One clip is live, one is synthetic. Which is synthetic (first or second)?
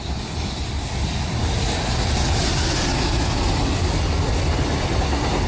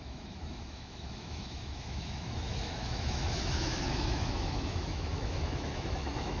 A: second